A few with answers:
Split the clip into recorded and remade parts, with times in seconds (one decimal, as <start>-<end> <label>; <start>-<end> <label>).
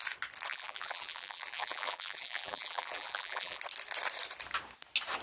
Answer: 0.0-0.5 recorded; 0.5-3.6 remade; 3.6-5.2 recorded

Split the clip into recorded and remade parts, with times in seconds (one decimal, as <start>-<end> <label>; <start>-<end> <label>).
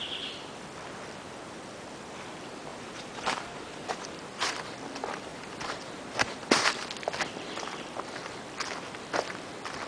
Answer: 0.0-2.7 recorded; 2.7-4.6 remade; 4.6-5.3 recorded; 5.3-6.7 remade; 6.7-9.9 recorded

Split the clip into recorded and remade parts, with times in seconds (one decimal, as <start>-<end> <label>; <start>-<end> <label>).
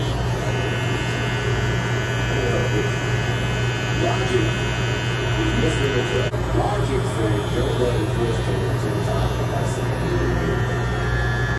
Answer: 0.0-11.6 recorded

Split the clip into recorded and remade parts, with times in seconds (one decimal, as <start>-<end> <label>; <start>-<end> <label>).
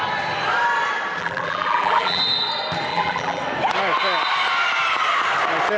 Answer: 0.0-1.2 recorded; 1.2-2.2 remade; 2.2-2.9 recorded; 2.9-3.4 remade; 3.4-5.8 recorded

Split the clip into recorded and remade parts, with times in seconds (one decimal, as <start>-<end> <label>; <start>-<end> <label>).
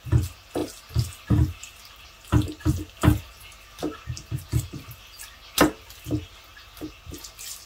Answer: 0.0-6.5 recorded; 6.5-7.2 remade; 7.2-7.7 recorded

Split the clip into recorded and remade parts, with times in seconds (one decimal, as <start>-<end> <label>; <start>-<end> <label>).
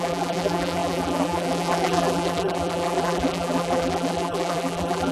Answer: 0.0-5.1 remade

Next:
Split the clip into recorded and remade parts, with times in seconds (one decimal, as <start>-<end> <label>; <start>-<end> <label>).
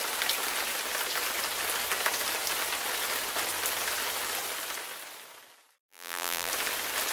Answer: 0.0-5.8 recorded; 5.8-6.5 remade; 6.5-7.1 recorded